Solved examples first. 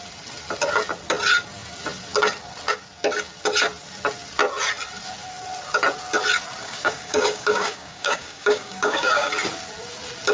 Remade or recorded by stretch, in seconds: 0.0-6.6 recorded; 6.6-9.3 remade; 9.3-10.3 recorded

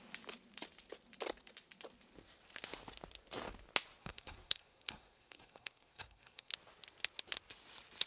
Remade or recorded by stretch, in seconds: 0.0-4.0 recorded; 4.0-6.5 remade; 6.5-8.1 recorded

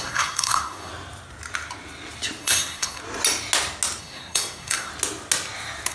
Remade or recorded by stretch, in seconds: 0.0-0.9 remade; 0.9-2.4 recorded; 2.4-3.0 remade; 3.0-4.0 recorded; 4.0-4.9 remade; 4.9-5.9 recorded